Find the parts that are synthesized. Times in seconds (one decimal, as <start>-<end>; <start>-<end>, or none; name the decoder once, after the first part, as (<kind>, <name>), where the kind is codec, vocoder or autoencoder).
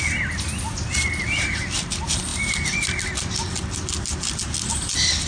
none